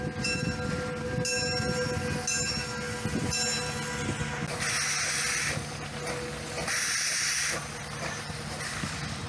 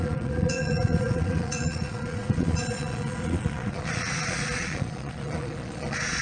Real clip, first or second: first